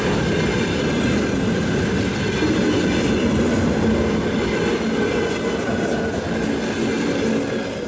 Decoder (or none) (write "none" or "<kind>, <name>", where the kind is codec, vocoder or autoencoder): none